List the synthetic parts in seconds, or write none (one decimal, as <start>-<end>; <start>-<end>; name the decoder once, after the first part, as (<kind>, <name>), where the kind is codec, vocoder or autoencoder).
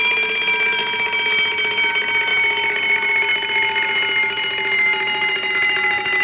none